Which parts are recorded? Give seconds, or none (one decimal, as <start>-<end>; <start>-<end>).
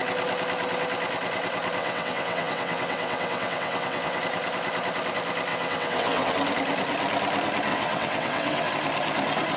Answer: 0.0-1.8; 4.2-5.5; 6.3-7.7; 8.7-9.6